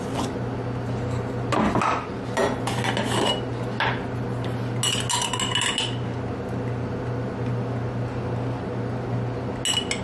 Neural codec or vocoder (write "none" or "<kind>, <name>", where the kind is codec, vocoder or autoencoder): none